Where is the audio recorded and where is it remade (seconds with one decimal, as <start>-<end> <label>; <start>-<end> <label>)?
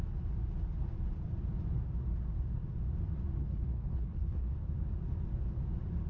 0.0-3.4 recorded; 3.4-4.5 remade; 4.5-6.1 recorded